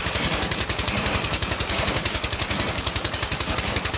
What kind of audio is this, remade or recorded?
remade